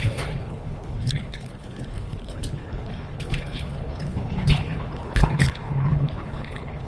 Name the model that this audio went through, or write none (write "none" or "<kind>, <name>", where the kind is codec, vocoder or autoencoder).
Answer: codec, HILCodec